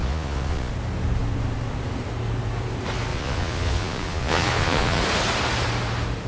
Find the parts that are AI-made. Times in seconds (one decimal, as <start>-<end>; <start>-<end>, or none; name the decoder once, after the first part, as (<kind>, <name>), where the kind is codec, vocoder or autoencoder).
0.0-0.7 (vocoder, Vocos); 3.1-5.0